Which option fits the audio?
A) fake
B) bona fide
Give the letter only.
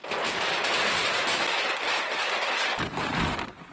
B